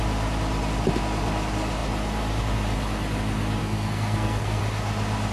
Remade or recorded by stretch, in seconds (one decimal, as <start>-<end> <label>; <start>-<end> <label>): 0.0-3.6 recorded; 3.6-4.6 remade; 4.6-5.3 recorded